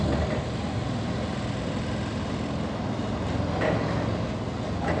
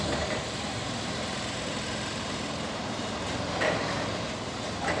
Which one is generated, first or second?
second